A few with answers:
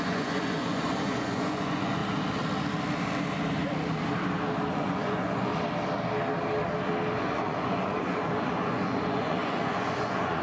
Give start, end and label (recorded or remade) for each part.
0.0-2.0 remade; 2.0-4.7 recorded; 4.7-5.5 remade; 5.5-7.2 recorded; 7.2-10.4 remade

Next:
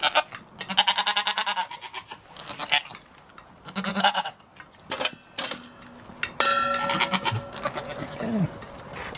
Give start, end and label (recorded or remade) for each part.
0.0-3.9 recorded; 3.9-4.5 remade; 4.5-9.2 recorded